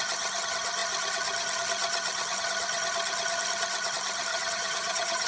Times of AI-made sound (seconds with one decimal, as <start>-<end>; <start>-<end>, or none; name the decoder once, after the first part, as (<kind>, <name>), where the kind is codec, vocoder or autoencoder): 4.3-5.3 (vocoder, HiFi-GAN)